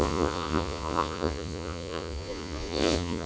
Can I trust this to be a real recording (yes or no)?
no